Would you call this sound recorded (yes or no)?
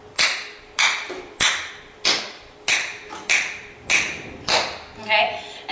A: yes